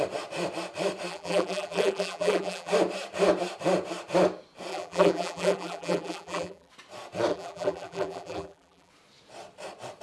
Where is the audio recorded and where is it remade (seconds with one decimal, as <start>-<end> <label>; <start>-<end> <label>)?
0.0-1.1 recorded; 1.1-2.7 remade; 2.7-4.7 recorded; 4.7-6.7 remade; 6.7-7.3 recorded; 7.3-8.9 remade; 8.9-10.0 recorded